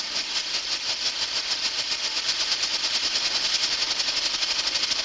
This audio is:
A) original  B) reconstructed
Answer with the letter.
A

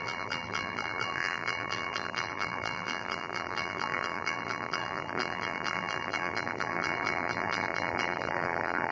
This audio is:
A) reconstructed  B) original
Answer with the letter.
A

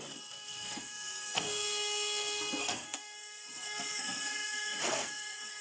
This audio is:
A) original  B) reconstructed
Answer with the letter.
B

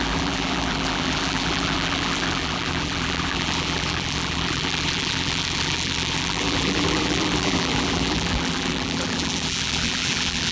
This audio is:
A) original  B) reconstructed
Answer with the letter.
B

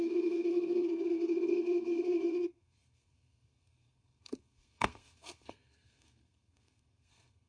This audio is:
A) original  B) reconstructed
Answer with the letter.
B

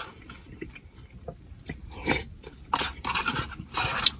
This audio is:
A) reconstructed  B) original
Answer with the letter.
A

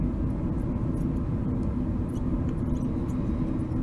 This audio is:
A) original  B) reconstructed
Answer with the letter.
A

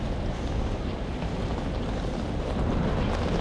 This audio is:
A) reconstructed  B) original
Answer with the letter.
B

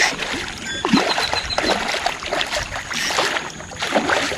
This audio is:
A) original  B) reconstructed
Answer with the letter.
A